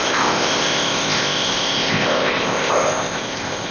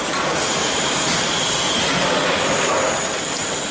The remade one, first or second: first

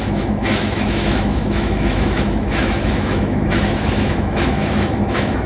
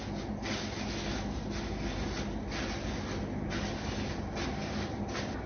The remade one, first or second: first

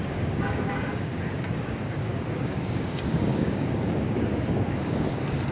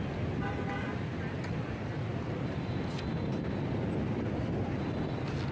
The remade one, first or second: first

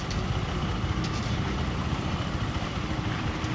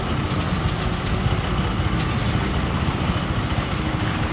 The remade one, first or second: first